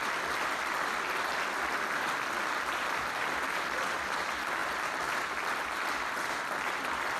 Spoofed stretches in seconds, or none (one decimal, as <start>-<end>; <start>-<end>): none